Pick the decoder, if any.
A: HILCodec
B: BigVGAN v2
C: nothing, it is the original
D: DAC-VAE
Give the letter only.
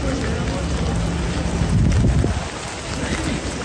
C